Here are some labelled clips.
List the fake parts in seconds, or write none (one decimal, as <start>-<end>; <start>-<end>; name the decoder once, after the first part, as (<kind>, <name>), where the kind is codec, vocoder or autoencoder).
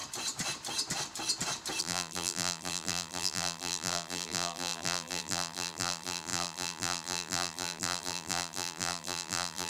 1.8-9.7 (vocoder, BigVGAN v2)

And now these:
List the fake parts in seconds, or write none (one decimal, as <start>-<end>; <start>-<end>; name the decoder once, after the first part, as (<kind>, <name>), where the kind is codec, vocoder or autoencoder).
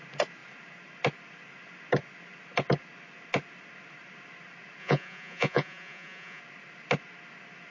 4.8-6.4 (vocoder, Vocos)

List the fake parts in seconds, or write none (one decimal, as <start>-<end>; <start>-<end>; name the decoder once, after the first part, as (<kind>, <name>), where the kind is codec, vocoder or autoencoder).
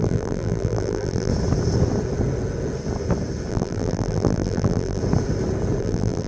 0.0-1.3 (vocoder, BigVGAN v2); 3.5-5.0; 5.8-6.3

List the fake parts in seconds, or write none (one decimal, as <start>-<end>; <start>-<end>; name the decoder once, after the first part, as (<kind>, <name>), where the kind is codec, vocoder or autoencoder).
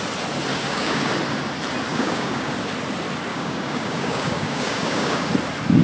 0.5-1.1 (codec, DAC); 1.9-2.5; 3.3-5.3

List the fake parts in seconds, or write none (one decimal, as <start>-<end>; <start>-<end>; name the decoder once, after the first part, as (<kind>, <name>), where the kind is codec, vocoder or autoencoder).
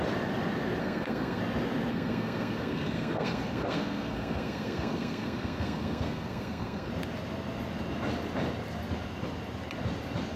0.8-1.4 (codec, SNAC); 1.9-6.9